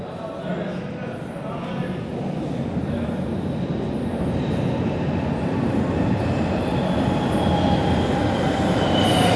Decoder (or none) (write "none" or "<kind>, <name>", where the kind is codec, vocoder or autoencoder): none